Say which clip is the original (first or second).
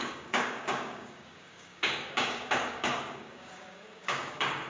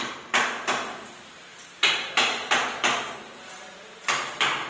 second